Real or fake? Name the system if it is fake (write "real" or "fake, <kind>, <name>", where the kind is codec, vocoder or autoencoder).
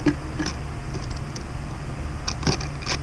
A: real